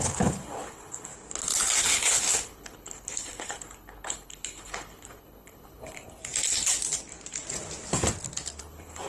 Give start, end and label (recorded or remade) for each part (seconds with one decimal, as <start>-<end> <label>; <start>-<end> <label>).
0.0-1.1 remade; 1.1-1.8 recorded; 1.8-6.2 remade; 6.2-8.6 recorded; 8.6-9.1 remade